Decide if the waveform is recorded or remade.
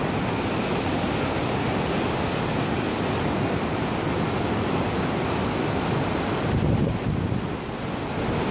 recorded